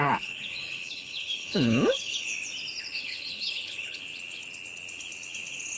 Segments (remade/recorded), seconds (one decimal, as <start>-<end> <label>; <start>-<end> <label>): 0.0-2.3 remade; 2.3-2.8 recorded; 2.8-4.0 remade; 4.0-5.8 recorded